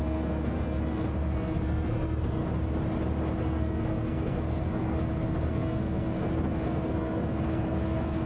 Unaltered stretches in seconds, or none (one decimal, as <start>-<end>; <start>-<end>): 2.4-3.4